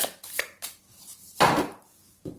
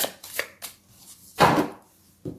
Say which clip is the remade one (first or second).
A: first